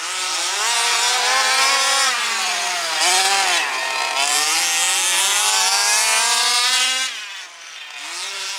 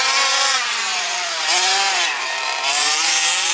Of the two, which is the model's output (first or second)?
second